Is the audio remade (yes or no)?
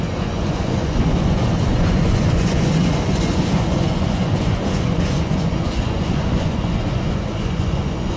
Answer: yes